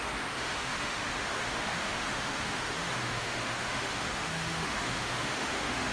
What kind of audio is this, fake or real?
fake